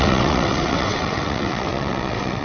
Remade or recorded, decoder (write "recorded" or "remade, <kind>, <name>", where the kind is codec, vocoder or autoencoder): remade, vocoder, WaveNeXt